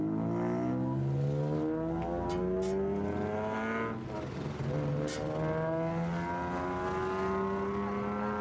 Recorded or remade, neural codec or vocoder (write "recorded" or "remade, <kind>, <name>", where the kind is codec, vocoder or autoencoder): recorded